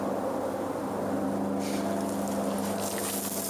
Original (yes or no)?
yes